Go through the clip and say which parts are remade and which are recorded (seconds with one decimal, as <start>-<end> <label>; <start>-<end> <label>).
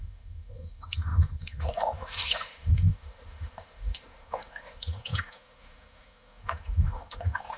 0.0-7.6 remade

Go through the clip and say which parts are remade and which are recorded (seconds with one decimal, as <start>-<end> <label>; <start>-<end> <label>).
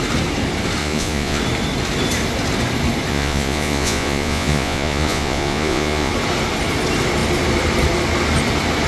0.0-0.8 recorded; 0.8-1.4 remade; 1.4-3.1 recorded; 3.1-6.1 remade; 6.1-8.9 recorded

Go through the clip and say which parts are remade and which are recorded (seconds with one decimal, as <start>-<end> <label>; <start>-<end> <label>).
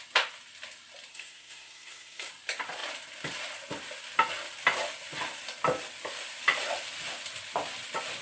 0.0-1.1 recorded; 1.1-2.3 remade; 2.3-8.2 recorded